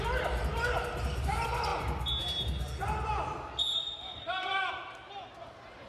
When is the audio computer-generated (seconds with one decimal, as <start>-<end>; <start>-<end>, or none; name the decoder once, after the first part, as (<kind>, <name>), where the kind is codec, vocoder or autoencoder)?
none

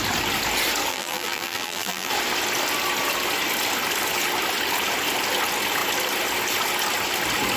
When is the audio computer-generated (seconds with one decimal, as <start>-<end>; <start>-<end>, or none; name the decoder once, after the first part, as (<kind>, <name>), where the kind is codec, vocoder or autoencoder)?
0.9-2.1 (vocoder, BigVGAN v2)

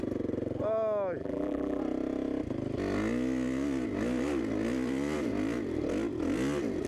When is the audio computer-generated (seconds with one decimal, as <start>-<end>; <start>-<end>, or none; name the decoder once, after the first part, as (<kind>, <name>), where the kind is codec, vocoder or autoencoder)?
1.2-1.8 (vocoder, BigVGAN v2)

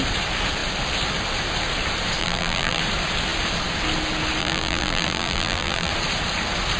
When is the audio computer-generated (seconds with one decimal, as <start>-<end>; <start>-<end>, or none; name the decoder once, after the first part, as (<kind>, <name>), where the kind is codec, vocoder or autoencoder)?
2.2-2.8 (vocoder, BigVGAN v2); 4.4-5.9

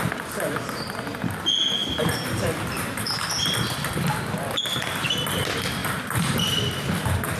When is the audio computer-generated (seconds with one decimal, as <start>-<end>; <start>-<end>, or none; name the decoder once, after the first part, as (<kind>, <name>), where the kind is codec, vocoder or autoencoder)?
1.8-3.1 (vocoder, BigVGAN v2); 5.8-6.8

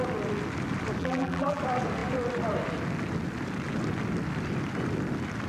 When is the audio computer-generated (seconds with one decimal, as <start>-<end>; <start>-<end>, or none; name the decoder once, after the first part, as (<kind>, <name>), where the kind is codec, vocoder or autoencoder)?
1.0-1.6 (vocoder, BigVGAN v2)

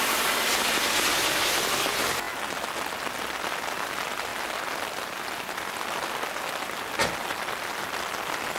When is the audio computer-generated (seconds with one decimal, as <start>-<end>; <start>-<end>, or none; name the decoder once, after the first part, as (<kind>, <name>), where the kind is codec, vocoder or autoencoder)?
none